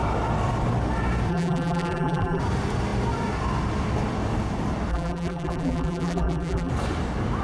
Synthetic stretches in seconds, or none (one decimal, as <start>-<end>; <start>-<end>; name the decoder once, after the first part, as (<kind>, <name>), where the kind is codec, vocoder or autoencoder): 1.3-2.4 (vocoder, BigVGAN v2); 4.9-6.7